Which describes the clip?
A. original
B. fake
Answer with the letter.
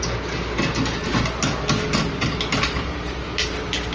A